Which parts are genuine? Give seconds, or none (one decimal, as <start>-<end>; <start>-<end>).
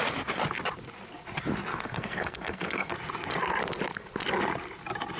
0.0-1.7; 2.9-5.2